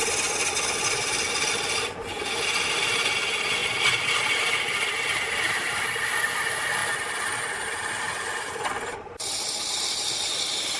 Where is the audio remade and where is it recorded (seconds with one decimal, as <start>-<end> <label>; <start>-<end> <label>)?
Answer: 0.0-10.8 recorded